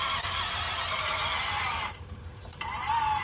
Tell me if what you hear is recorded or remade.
remade